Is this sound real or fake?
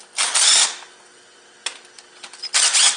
real